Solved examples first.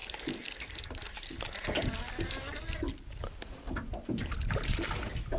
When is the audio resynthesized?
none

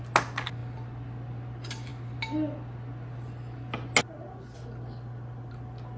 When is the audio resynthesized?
none

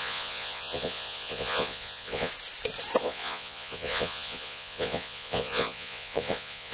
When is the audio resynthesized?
0.0-2.3 (vocoder, Vocos); 3.0-6.7

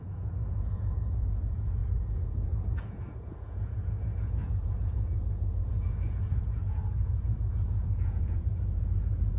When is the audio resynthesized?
0.0-9.4 (vocoder, Vocos)

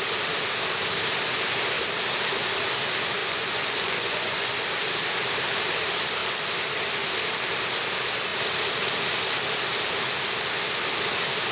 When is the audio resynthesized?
3.2-4.5 (vocoder, Vocos)